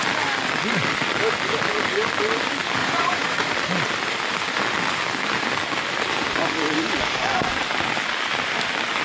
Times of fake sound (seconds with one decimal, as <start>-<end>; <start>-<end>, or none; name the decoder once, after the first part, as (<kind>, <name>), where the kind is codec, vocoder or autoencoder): 2.8-3.5 (vocoder, Vocos)